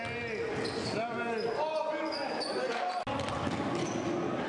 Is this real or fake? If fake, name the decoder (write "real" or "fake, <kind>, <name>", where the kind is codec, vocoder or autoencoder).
real